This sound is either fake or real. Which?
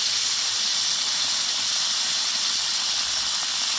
real